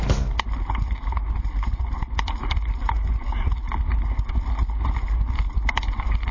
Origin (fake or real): real